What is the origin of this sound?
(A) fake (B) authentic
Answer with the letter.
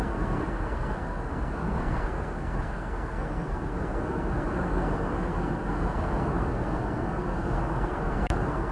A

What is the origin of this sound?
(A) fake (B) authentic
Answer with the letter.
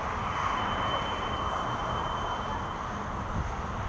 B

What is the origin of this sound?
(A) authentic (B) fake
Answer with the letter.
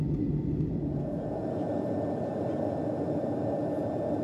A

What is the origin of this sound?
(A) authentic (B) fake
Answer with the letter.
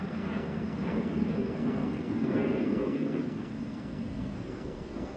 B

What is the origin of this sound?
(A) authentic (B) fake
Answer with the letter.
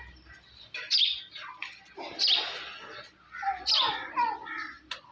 A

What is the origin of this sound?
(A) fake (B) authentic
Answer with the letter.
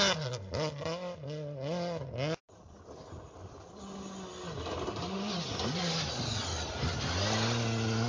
B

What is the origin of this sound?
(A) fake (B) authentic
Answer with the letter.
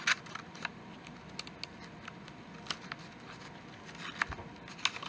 B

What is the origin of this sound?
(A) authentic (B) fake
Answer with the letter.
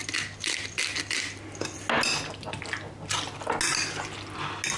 A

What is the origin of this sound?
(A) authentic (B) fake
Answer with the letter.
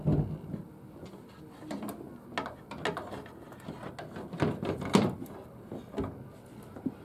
A